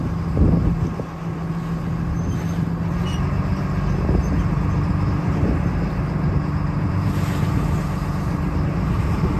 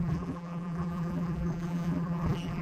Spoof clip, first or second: second